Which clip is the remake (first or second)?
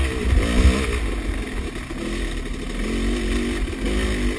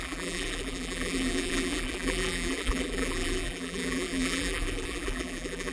second